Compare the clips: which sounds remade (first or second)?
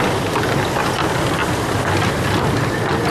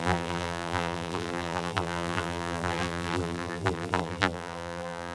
second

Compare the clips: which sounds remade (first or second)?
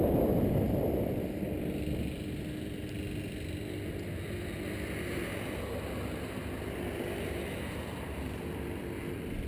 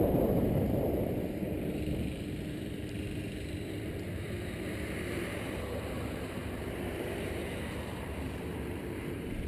second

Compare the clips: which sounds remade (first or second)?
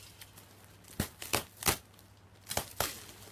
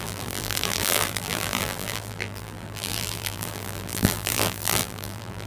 second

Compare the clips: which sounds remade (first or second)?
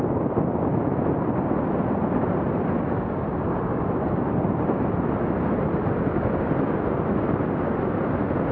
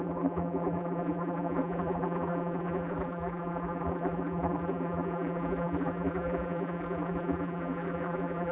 second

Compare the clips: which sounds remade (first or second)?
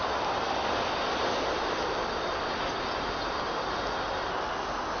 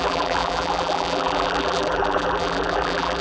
second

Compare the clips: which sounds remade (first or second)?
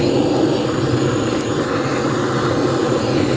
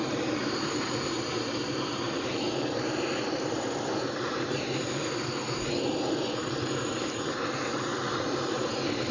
second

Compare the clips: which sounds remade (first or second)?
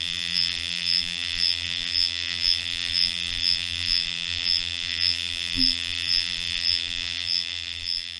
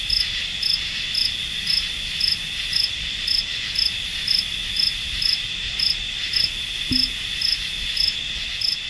first